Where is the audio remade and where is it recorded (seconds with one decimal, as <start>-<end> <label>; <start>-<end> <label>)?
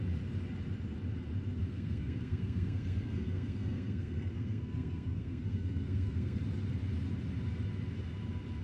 0.0-1.6 recorded; 1.6-6.4 remade; 6.4-8.6 recorded